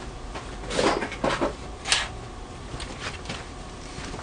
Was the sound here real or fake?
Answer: real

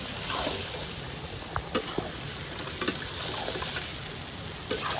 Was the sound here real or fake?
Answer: real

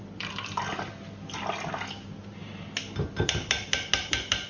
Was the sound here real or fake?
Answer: real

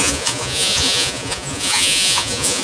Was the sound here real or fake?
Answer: fake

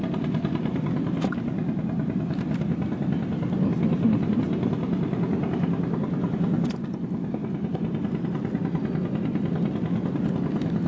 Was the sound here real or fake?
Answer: real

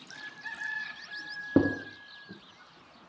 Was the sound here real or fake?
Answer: real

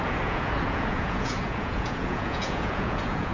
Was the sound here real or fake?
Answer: fake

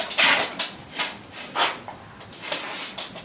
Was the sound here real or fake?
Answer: real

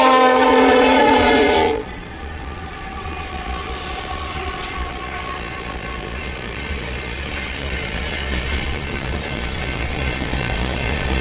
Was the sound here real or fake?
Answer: fake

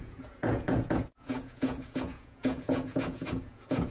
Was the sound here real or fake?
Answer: fake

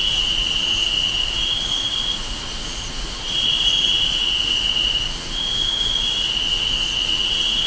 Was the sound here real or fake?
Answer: fake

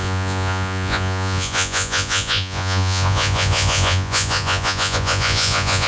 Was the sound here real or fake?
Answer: fake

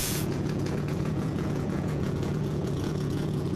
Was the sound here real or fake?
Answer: fake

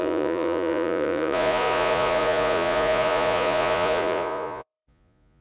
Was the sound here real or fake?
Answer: fake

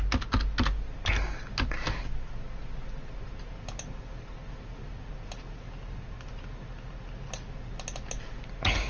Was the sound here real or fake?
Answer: real